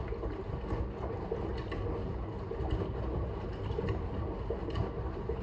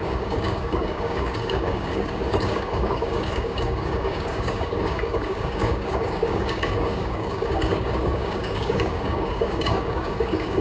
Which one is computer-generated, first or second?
second